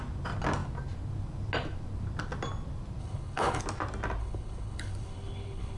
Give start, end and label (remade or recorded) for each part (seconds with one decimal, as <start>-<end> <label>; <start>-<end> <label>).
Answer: 0.0-3.0 recorded; 3.0-3.6 remade; 3.6-4.2 recorded; 4.2-5.8 remade

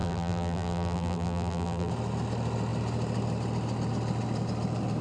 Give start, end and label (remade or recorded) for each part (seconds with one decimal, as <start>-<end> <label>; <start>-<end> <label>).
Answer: 0.0-1.9 remade; 1.9-5.0 recorded

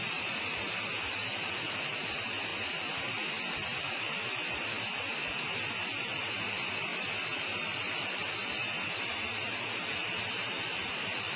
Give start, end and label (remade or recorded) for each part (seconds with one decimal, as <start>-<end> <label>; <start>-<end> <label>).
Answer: 0.0-2.5 remade; 2.5-4.0 recorded; 4.0-6.9 remade; 6.9-7.4 recorded; 7.4-11.4 remade

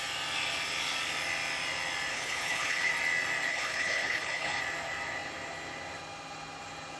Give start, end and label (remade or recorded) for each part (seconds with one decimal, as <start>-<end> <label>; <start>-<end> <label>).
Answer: 0.0-2.1 recorded; 2.1-2.9 remade; 2.9-3.5 recorded; 3.5-4.6 remade; 4.6-7.0 recorded

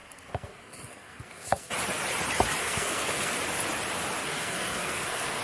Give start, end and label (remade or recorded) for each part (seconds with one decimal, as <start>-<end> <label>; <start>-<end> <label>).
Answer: 0.0-1.7 remade; 1.7-2.6 recorded; 2.6-3.4 remade; 3.4-4.2 recorded; 4.2-5.4 remade

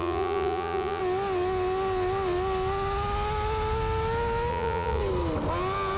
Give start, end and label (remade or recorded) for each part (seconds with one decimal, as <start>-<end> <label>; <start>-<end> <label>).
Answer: 0.0-1.0 remade; 1.0-4.5 recorded; 4.5-5.0 remade; 5.0-6.0 recorded